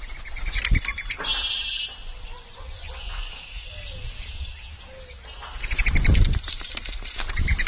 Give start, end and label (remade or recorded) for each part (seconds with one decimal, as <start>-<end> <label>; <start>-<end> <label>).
0.0-2.0 recorded; 2.0-3.3 remade; 3.3-7.7 recorded